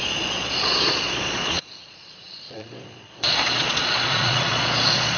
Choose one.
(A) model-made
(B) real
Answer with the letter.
A